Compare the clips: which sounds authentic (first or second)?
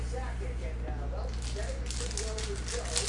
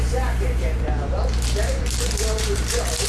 first